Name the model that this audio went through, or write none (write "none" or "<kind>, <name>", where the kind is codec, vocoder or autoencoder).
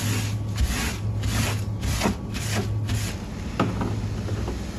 none